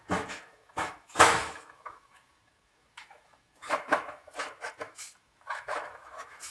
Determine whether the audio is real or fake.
fake